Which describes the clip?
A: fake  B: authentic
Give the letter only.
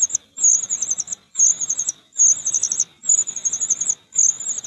B